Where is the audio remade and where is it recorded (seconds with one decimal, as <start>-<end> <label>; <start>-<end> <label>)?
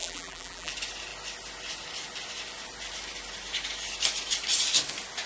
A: 0.0-0.7 remade; 0.7-5.3 recorded